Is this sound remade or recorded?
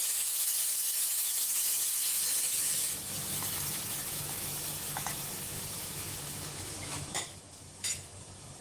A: remade